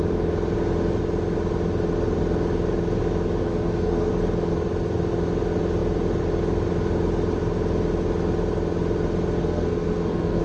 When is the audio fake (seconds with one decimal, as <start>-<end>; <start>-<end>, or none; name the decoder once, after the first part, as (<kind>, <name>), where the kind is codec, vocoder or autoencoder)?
3.4-4.1 (codec, SNAC); 9.4-10.4